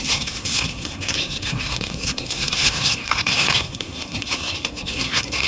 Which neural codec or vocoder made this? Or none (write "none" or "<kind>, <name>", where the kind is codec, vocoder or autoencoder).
codec, SNAC